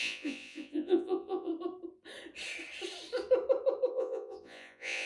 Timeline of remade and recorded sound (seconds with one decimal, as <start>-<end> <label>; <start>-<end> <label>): 0.0-1.5 remade; 1.5-3.9 recorded; 3.9-5.1 remade